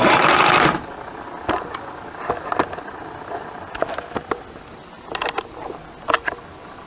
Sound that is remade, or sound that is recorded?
recorded